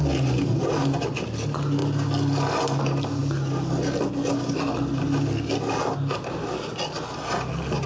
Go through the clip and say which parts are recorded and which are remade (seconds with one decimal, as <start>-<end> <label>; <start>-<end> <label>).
0.0-7.9 recorded